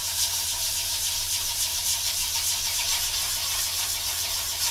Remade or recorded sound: remade